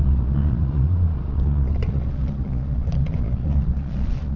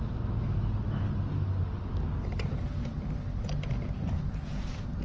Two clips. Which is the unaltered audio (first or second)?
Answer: second